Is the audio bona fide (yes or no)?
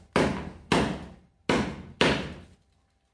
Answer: yes